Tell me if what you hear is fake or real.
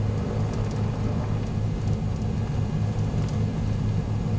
real